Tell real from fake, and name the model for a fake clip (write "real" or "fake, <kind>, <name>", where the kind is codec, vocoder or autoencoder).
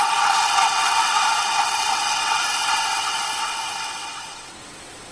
fake, vocoder, WaveNeXt